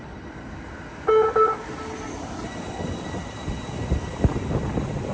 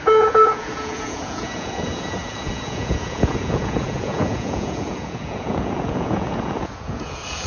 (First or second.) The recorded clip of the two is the first